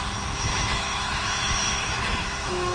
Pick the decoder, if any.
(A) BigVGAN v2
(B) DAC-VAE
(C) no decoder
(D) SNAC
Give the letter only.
B